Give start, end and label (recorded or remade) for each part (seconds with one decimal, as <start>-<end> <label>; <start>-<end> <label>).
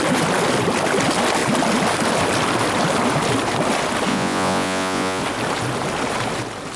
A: 0.0-4.1 recorded; 4.1-5.2 remade; 5.2-6.8 recorded